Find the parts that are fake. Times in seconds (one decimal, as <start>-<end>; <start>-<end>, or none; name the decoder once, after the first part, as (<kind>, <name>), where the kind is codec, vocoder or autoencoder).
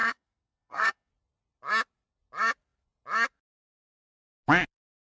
0.0-1.1 (codec, SNAC)